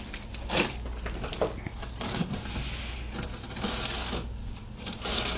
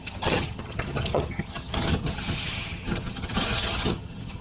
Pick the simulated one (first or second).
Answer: second